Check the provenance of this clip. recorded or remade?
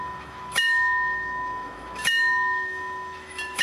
remade